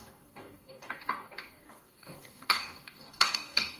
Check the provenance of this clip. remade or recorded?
remade